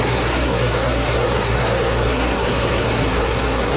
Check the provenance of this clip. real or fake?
fake